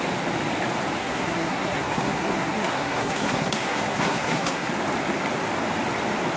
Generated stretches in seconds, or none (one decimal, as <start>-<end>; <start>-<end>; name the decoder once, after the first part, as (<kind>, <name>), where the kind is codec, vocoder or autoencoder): 1.0-4.7 (codec, SNAC)